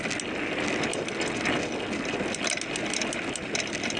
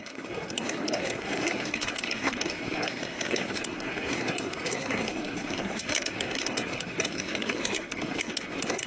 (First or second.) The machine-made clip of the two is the second